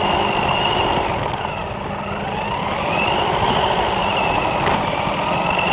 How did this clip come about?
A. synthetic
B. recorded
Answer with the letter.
B